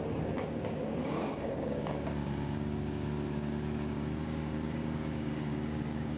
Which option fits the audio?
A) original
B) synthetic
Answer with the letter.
B